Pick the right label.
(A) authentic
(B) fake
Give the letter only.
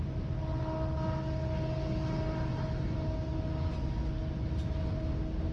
A